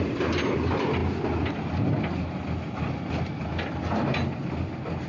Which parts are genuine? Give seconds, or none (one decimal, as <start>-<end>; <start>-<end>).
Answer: 0.0-5.1